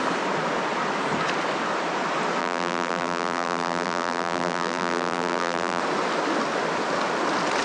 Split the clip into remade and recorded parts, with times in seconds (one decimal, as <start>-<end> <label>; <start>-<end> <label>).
0.0-2.4 recorded; 2.4-5.8 remade; 5.8-7.6 recorded